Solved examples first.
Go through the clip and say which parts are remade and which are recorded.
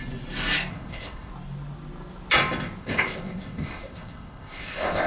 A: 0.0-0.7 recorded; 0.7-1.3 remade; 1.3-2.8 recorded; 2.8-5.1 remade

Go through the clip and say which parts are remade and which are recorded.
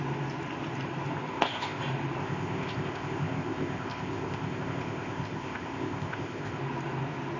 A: 0.0-1.3 recorded; 1.3-1.8 remade; 1.8-2.2 recorded; 2.2-6.6 remade; 6.6-7.4 recorded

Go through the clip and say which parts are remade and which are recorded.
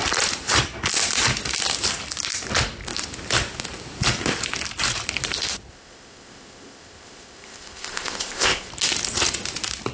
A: 0.0-5.7 recorded; 5.7-8.7 remade; 8.7-9.9 recorded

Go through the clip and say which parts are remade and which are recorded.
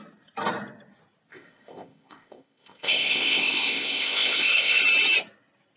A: 0.0-1.3 recorded; 1.3-4.8 remade; 4.8-5.8 recorded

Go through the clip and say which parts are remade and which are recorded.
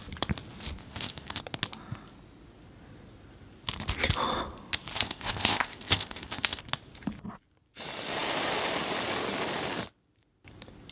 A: 0.0-0.8 recorded; 0.8-1.4 remade; 1.4-4.9 recorded; 4.9-6.6 remade; 6.6-10.9 recorded